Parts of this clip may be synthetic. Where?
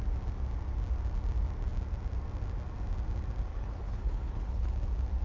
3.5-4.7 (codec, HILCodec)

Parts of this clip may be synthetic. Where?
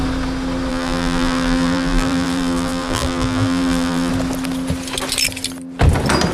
0.7-4.1 (vocoder, BigVGAN v2)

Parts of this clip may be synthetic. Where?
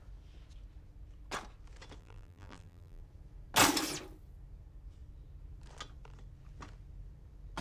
2.0-3.0 (vocoder, BigVGAN v2)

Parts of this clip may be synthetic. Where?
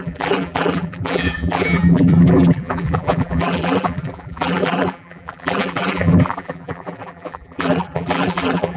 0.0-8.8 (vocoder, BigVGAN v2)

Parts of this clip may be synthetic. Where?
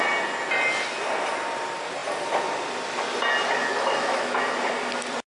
3.6-4.4 (autoencoder, DAC-VAE)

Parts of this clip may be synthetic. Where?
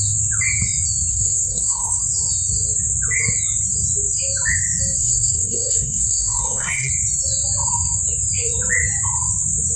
1.1-2.0 (codec, SNAC); 5.0-6.9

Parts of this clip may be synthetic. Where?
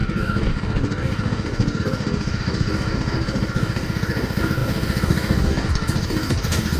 0.0-6.8 (codec, DAC)